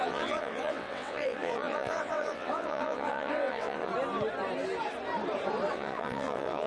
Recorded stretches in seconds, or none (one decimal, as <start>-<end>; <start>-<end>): 3.9-5.7